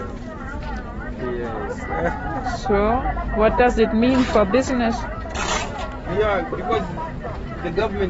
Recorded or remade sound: recorded